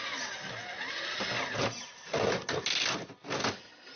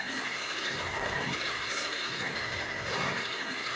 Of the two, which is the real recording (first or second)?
first